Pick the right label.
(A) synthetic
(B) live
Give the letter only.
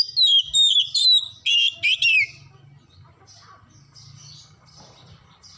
B